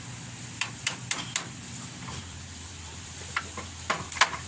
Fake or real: fake